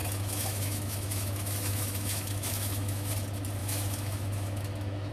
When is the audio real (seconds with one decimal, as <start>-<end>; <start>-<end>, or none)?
3.1-3.6